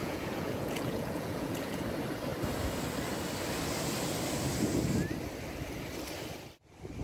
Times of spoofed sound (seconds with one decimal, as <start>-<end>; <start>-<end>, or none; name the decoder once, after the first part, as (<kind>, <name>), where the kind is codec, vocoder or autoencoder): 0.0-1.8 (vocoder, Vocos)